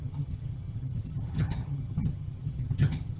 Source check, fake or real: fake